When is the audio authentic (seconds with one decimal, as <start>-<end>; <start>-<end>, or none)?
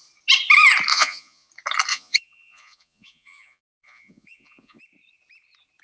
0.0-0.9; 1.5-1.9; 4.8-5.8